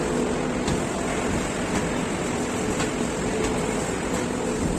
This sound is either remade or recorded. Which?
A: recorded